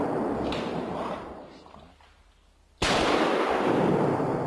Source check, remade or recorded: recorded